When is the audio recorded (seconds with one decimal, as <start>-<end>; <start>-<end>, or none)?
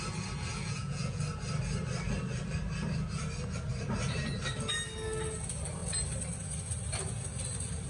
0.0-0.5; 1.2-7.9